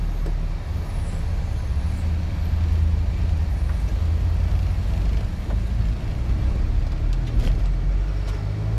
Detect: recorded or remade recorded